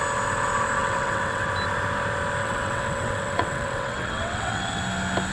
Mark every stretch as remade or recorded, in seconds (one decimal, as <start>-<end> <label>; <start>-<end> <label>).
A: 0.0-0.8 recorded; 0.8-1.5 remade; 1.5-2.4 recorded; 2.4-4.8 remade; 4.8-5.3 recorded